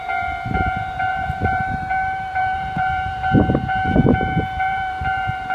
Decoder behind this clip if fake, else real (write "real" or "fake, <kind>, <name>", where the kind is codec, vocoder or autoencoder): fake, vocoder, BigVGAN v2